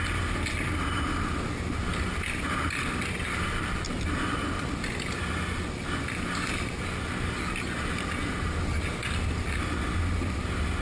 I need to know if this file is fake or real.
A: real